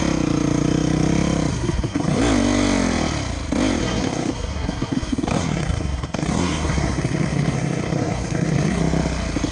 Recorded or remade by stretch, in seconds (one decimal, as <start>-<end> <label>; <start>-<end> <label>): 0.0-1.5 recorded; 1.5-2.2 remade; 2.2-3.8 recorded; 3.8-8.8 remade; 8.8-9.5 recorded